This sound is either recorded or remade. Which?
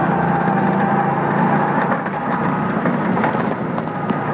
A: recorded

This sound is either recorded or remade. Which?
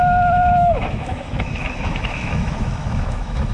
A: remade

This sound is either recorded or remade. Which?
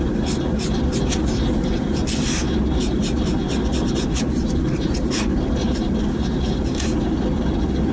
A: recorded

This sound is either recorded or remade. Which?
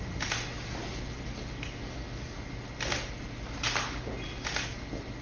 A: recorded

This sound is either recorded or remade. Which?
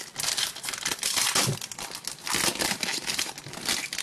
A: recorded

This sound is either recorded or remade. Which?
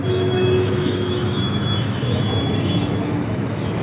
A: remade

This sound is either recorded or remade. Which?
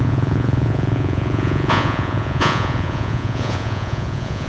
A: remade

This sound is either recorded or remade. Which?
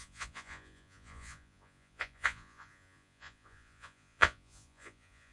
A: remade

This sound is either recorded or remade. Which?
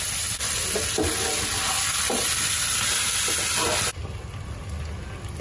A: recorded